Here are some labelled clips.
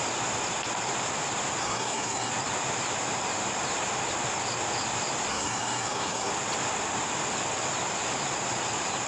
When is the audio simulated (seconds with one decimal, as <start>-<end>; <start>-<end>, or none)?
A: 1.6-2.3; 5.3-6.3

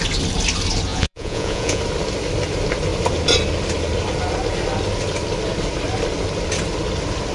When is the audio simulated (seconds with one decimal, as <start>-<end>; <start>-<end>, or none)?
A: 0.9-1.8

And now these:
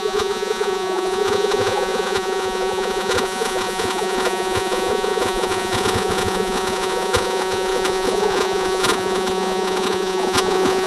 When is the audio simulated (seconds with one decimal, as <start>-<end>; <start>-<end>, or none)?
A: 0.0-10.9

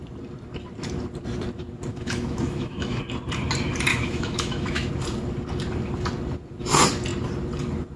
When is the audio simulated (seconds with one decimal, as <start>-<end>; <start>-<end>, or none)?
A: 1.9-3.0; 3.9-4.9

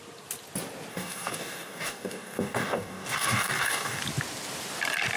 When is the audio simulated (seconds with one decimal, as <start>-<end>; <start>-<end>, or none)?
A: 0.9-4.0

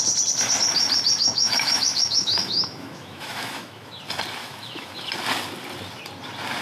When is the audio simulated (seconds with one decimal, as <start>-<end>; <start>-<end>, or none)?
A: 1.2-4.0; 4.4-5.1

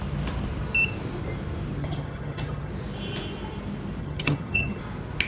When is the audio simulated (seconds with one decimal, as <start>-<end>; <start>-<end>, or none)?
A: 1.8-2.7; 4.0-4.8

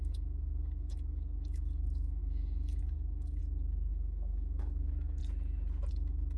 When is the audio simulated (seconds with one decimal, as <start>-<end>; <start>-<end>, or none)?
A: 0.0-3.4; 3.9-5.2; 5.9-6.4